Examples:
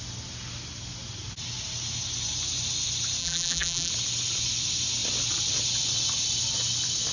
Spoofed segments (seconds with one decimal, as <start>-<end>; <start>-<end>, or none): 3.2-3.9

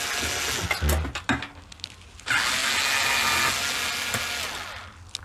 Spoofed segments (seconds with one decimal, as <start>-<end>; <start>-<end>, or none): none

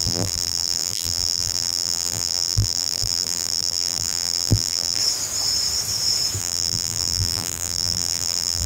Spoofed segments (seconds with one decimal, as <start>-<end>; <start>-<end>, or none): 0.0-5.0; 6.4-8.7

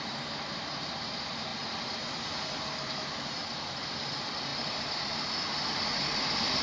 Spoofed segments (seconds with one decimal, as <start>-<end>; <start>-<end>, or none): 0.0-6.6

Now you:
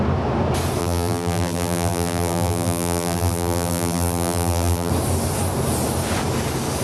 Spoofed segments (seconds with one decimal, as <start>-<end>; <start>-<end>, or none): 0.8-4.9

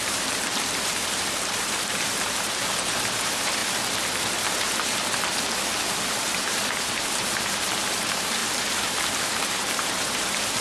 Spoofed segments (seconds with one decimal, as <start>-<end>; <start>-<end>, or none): 0.0-3.6; 6.1-10.6